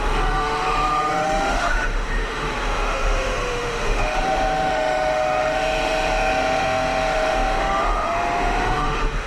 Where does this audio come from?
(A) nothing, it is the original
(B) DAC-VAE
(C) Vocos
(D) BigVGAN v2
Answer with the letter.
B